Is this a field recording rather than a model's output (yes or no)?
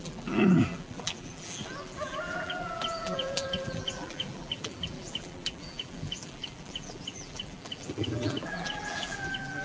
no